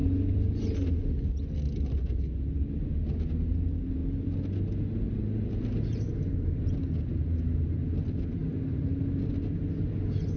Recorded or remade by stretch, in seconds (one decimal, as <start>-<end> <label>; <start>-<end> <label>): 0.0-10.4 recorded

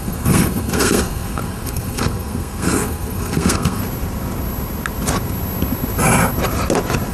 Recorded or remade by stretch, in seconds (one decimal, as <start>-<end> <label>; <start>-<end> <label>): 0.0-3.8 remade; 3.8-7.1 recorded

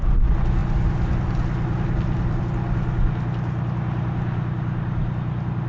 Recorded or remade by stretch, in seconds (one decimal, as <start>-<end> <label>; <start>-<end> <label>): 0.0-5.7 recorded

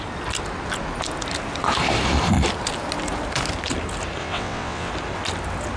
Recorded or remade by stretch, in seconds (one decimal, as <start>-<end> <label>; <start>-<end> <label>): 0.0-4.2 recorded; 4.2-4.9 remade; 4.9-5.8 recorded

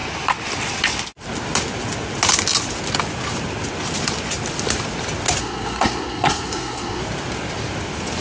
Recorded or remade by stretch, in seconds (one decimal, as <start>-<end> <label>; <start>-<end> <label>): 0.0-5.4 recorded; 5.4-7.0 remade; 7.0-8.2 recorded